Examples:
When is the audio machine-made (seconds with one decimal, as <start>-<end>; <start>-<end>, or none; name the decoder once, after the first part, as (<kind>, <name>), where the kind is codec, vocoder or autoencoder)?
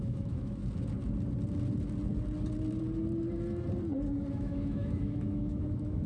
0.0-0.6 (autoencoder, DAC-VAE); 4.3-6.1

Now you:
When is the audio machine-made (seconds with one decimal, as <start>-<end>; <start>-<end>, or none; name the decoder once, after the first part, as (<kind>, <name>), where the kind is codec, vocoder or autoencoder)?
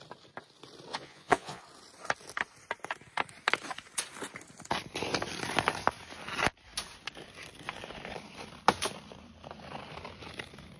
0.9-1.6 (vocoder, Vocos)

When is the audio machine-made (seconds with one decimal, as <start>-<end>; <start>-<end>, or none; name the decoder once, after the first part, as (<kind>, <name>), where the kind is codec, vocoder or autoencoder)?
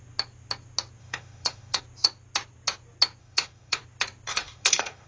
1.0-1.8 (autoencoder, DAC-VAE); 3.2-3.8; 4.3-5.1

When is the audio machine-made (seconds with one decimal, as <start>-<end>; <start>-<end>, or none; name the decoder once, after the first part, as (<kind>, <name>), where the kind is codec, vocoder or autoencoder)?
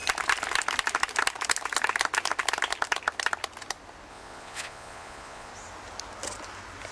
4.1-5.5 (vocoder, Vocos)